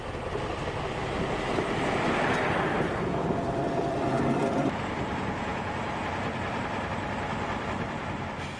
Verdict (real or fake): fake